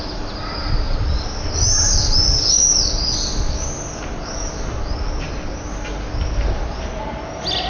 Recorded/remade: recorded